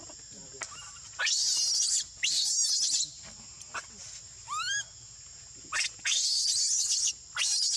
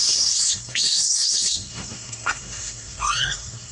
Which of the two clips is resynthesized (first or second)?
second